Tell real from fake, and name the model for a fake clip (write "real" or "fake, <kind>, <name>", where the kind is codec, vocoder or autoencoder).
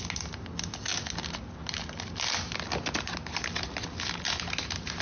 real